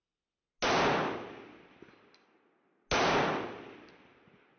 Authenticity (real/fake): real